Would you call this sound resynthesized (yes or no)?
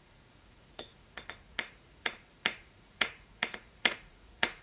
yes